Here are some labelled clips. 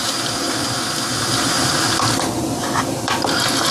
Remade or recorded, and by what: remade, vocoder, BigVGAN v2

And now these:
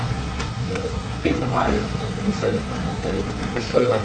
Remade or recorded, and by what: remade, codec, SNAC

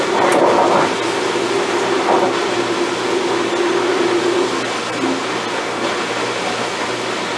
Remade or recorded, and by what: recorded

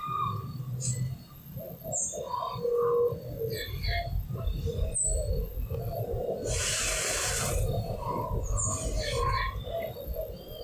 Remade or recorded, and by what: recorded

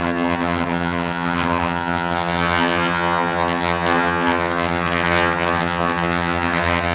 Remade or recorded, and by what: remade, vocoder, HiFi-GAN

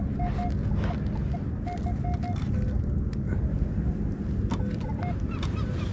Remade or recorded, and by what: recorded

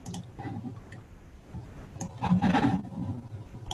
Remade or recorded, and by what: remade, vocoder, BigVGAN v2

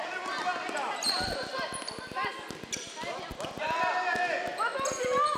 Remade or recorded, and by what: recorded